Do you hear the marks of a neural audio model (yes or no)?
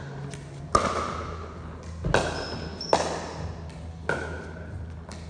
no